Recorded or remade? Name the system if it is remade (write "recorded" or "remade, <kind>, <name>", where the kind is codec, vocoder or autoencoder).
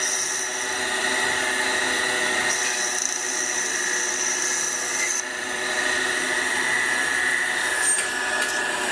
recorded